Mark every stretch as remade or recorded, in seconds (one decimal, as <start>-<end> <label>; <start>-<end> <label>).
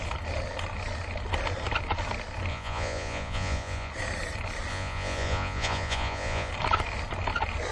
0.0-2.5 recorded; 2.5-3.9 remade; 3.9-4.7 recorded; 4.7-6.5 remade; 6.5-7.7 recorded